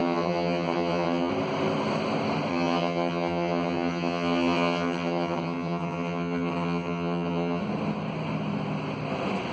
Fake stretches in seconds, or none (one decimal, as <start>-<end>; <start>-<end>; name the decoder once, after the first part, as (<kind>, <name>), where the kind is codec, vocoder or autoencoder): 0.0-1.3 (vocoder, HiFi-GAN); 2.5-7.6